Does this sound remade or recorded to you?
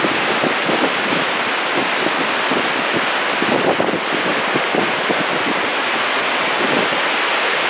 recorded